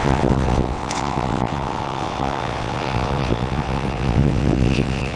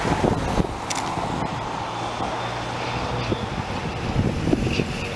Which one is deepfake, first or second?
first